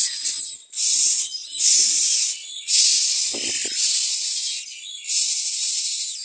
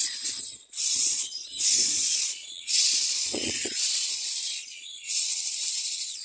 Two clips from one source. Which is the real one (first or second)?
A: first